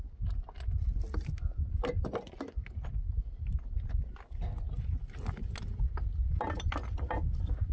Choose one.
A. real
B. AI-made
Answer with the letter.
A